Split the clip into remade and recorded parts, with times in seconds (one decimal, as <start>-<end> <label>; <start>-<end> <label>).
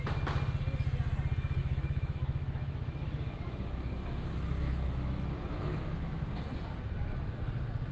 0.0-1.6 recorded; 1.6-6.3 remade; 6.3-7.9 recorded